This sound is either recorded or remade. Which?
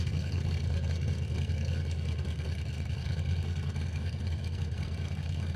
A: remade